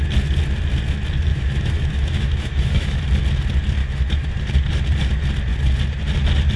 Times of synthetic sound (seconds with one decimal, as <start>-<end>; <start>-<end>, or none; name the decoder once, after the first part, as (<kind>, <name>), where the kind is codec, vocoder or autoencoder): 1.3-3.0 (autoencoder, DAC-VAE); 3.8-4.3